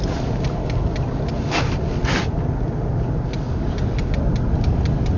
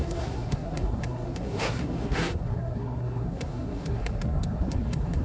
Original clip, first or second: first